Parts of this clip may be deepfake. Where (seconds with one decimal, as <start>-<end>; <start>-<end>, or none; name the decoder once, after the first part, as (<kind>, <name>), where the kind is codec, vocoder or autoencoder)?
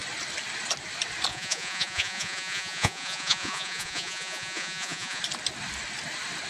1.3-5.2 (vocoder, Vocos)